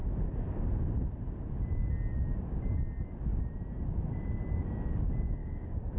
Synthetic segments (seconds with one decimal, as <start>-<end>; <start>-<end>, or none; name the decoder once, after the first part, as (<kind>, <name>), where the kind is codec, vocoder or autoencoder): 0.0-0.7 (codec, DAC); 5.4-6.0